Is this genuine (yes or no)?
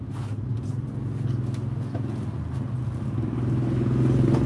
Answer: yes